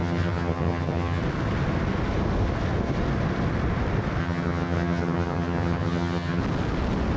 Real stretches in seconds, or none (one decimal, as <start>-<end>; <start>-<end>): 1.2-4.2; 6.4-7.2